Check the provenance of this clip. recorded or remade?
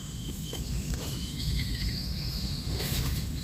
remade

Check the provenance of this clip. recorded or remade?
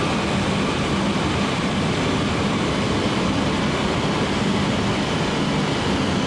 recorded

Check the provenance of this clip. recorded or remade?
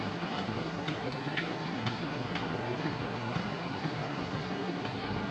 remade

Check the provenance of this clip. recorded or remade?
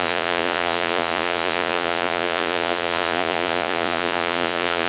remade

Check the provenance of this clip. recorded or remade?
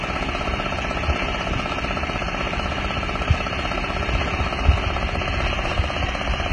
recorded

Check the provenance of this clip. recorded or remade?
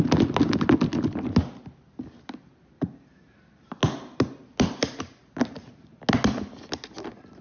recorded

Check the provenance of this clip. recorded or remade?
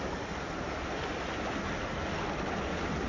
recorded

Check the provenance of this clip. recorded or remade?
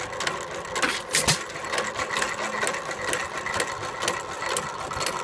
recorded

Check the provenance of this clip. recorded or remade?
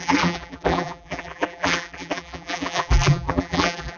remade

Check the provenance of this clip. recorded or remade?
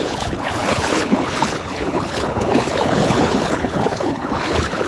remade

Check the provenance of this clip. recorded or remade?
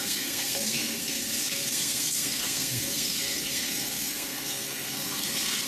remade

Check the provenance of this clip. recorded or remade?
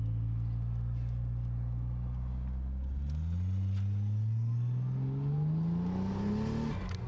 recorded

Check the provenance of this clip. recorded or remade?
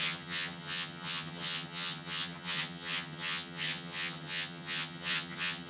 remade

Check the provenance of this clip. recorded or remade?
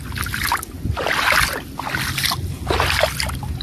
recorded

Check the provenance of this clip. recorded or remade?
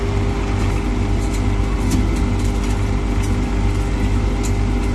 recorded